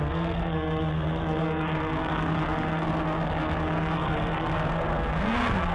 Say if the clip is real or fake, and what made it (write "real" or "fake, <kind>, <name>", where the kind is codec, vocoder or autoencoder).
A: fake, codec, SNAC